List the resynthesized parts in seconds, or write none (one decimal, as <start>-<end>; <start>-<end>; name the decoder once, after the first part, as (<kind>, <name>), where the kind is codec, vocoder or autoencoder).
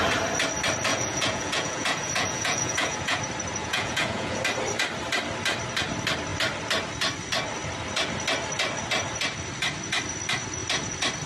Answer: 0.9-3.2 (vocoder, Vocos); 3.6-4.4